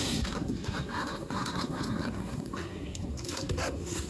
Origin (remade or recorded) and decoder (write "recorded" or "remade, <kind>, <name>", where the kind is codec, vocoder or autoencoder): remade, codec, SNAC